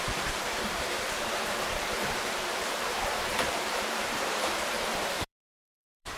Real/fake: fake